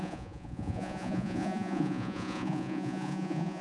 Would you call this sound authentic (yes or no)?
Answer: no